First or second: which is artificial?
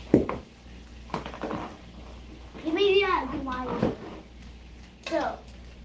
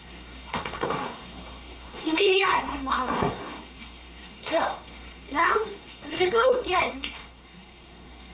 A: second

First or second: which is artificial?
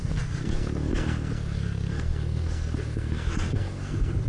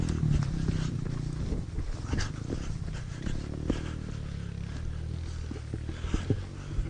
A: first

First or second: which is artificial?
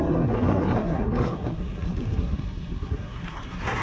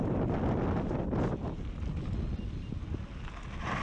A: first